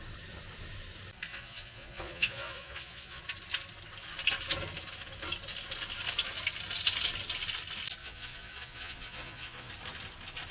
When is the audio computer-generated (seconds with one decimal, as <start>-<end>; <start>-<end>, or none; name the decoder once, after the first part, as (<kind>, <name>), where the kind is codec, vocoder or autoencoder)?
1.3-3.2 (vocoder, Vocos); 8.0-9.7